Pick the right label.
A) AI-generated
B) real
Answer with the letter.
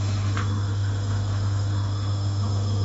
A